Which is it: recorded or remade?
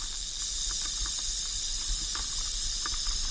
recorded